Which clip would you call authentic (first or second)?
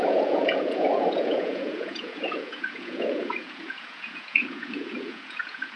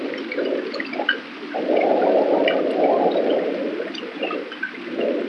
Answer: second